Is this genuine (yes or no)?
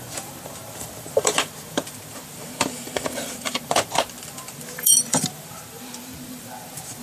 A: no